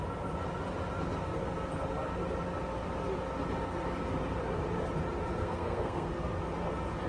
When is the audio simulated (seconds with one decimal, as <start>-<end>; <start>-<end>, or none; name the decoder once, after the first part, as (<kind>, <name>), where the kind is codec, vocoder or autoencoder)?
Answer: 5.4-6.1 (codec, SNAC)